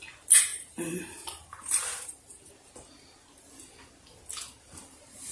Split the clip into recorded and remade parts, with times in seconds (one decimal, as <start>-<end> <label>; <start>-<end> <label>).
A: 0.0-0.5 recorded; 0.5-2.5 remade; 2.5-5.3 recorded

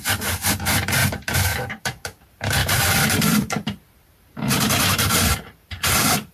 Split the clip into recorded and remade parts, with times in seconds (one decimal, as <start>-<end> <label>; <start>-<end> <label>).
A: 0.0-6.3 remade

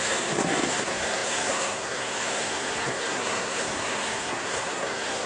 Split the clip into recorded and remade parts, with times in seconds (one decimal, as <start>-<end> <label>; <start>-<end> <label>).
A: 0.0-5.3 remade

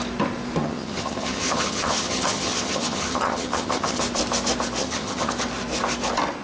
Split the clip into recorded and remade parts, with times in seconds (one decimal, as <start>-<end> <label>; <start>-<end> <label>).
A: 0.0-0.6 recorded; 0.6-4.0 remade; 4.0-4.8 recorded; 4.8-5.3 remade; 5.3-6.4 recorded